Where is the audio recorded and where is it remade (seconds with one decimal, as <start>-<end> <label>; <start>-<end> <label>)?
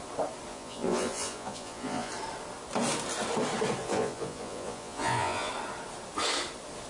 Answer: 0.0-0.5 recorded; 0.5-2.1 remade; 2.1-3.8 recorded; 3.8-5.5 remade; 5.5-6.9 recorded